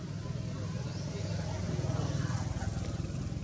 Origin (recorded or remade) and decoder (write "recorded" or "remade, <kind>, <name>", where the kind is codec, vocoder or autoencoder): recorded